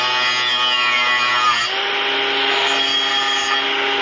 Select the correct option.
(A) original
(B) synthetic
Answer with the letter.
A